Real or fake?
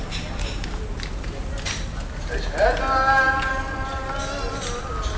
real